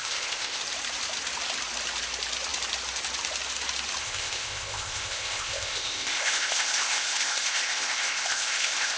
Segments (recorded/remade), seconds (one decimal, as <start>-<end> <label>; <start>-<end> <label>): 0.0-0.6 remade; 0.6-4.0 recorded; 4.0-9.0 remade

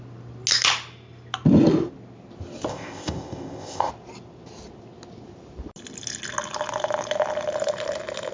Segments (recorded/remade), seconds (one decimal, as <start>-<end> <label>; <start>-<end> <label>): 0.0-2.7 recorded; 2.7-3.9 remade; 3.9-8.3 recorded

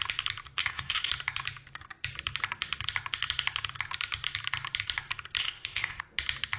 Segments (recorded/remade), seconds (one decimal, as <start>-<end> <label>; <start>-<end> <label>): 0.0-0.6 recorded; 0.6-1.1 remade; 1.1-5.4 recorded; 5.4-6.0 remade; 6.0-6.6 recorded